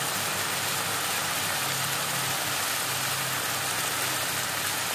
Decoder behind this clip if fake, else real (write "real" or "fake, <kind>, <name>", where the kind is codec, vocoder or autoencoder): real